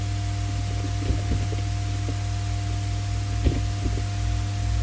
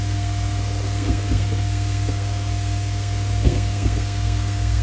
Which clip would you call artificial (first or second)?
second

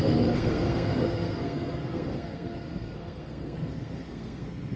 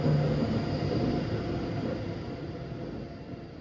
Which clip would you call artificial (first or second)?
first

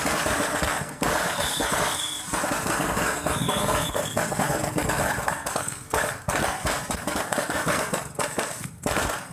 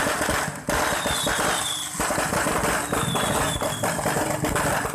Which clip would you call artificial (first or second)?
first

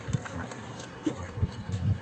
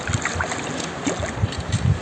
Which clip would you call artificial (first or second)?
first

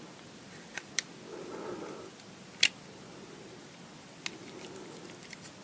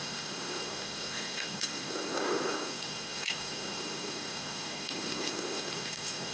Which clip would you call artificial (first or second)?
second